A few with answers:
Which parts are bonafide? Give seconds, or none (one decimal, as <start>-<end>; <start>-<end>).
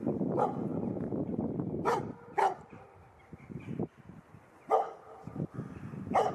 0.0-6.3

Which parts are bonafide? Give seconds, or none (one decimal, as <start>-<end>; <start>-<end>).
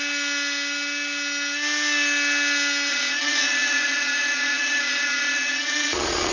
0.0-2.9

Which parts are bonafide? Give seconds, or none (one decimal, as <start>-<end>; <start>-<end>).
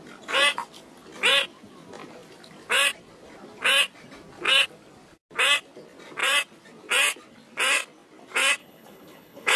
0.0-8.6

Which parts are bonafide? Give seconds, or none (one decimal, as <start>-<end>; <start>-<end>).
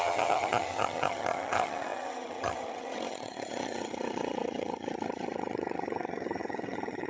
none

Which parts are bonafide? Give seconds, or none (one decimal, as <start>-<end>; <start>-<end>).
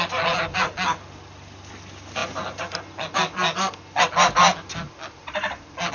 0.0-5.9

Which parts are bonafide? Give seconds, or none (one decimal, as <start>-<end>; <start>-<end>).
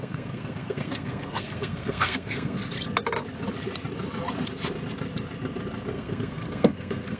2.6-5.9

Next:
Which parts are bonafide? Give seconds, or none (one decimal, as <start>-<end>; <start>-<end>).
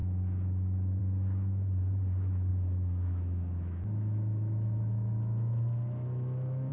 1.0-2.5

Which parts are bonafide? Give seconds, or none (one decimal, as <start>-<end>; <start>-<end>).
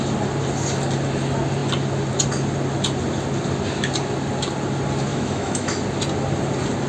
0.0-5.1; 5.8-6.9